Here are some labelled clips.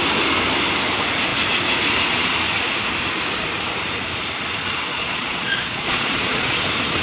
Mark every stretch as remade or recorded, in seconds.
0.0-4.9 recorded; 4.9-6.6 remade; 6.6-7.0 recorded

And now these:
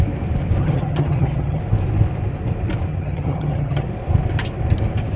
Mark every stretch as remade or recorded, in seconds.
0.0-0.6 recorded; 0.6-1.6 remade; 1.6-2.9 recorded; 2.9-3.9 remade; 3.9-5.2 recorded

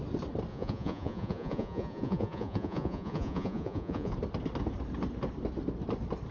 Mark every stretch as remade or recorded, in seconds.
0.0-0.5 recorded; 0.5-4.1 remade; 4.1-6.3 recorded

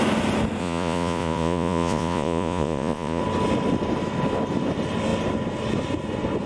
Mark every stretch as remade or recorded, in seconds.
0.0-0.6 recorded; 0.6-3.2 remade; 3.2-6.5 recorded

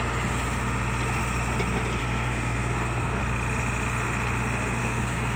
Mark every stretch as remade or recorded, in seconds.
0.0-2.0 recorded; 2.0-3.2 remade; 3.2-4.8 recorded; 4.8-5.4 remade

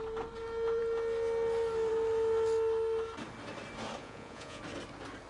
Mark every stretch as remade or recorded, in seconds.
0.0-4.0 recorded; 4.0-4.6 remade; 4.6-5.3 recorded

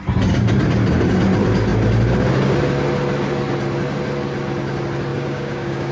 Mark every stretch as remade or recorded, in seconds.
0.0-5.1 recorded; 5.1-5.9 remade